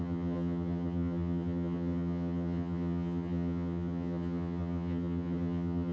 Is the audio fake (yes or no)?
yes